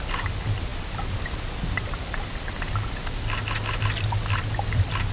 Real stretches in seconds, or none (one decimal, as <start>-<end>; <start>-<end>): 0.0-5.1